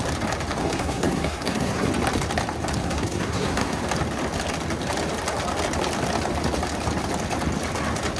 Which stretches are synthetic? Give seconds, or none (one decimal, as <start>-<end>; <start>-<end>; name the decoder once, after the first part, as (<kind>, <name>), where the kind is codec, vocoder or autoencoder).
0.6-1.9 (codec, SNAC); 2.8-3.8